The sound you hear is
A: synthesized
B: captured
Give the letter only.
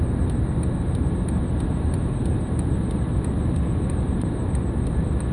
B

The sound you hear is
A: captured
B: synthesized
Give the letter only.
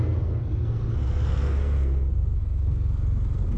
B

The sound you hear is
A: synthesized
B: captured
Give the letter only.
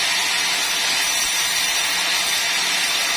B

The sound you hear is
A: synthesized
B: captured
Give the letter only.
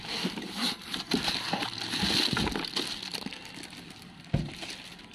B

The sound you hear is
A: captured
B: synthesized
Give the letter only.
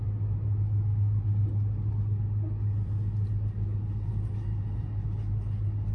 A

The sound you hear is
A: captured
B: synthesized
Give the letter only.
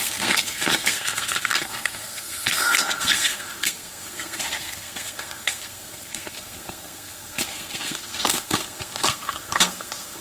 B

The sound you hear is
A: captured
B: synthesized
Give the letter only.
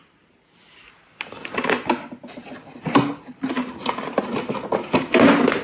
A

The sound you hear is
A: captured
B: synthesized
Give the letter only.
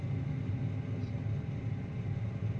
A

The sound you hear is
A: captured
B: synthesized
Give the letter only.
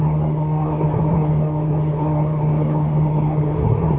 B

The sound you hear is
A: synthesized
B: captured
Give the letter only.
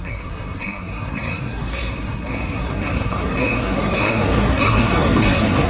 A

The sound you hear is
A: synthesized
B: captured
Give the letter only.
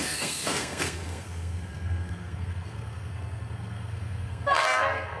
A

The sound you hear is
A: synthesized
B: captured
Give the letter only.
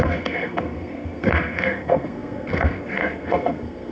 A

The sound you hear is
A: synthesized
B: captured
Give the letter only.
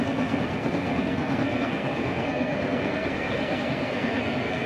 A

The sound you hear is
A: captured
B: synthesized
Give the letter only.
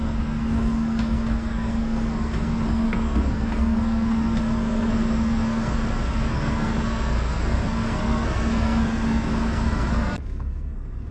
B